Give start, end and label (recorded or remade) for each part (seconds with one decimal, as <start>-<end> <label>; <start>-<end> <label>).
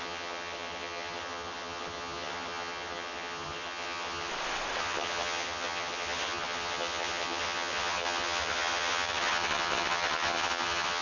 0.0-4.3 remade; 4.3-4.8 recorded; 4.8-11.0 remade